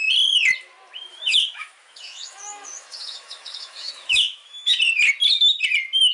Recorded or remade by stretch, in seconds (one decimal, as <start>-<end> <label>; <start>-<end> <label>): 0.0-1.1 recorded; 1.1-4.8 remade; 4.8-6.1 recorded